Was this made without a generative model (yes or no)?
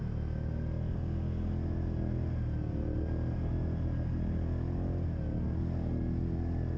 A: yes